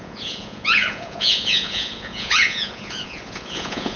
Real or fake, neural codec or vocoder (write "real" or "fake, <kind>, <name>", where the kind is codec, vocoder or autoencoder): fake, vocoder, Vocos